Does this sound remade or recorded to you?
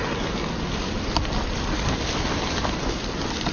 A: recorded